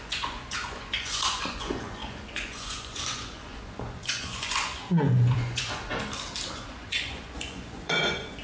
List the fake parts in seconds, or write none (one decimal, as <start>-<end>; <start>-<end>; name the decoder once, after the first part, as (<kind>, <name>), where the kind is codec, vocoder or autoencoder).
0.0-5.9 (vocoder, Vocos); 6.5-8.4